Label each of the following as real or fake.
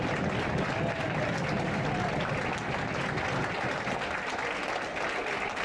real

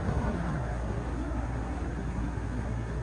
fake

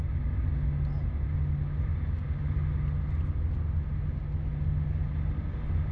real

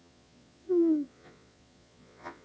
fake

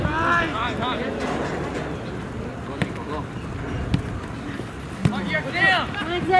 real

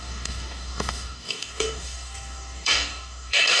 fake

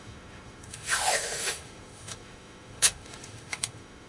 fake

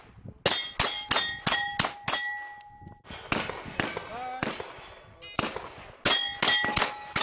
real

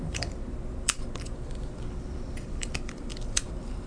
fake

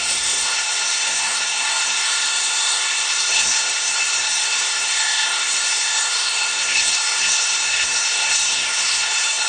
fake